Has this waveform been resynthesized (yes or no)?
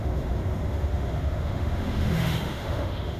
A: yes